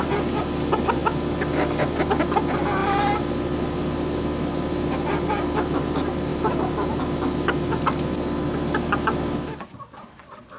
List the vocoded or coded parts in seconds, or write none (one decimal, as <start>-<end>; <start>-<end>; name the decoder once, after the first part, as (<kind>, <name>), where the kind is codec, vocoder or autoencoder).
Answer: 6.3-7.0 (vocoder, BigVGAN v2)